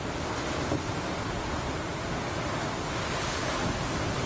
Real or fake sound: real